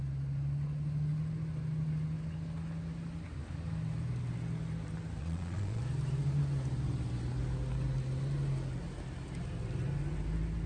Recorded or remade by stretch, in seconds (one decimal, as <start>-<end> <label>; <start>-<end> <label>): 0.0-5.2 recorded; 5.2-5.8 remade; 5.8-10.7 recorded